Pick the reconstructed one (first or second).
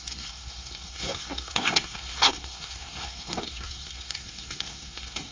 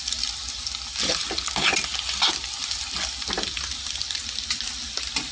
first